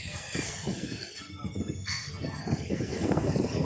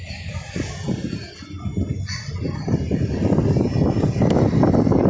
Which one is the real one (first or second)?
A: second